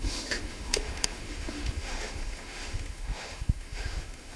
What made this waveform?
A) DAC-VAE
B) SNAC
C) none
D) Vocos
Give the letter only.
A